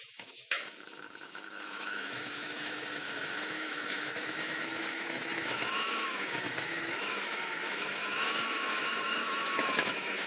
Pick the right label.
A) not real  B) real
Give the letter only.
A